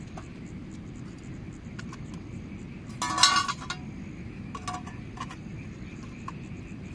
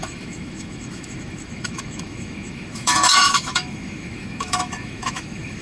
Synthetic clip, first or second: second